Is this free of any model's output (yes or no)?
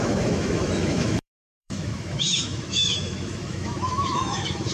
no